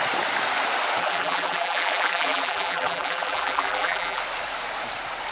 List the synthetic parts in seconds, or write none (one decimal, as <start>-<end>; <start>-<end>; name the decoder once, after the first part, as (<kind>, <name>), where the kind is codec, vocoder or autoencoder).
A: 1.0-4.2 (vocoder, BigVGAN v2)